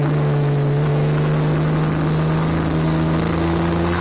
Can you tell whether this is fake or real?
real